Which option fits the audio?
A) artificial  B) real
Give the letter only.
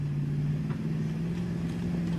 B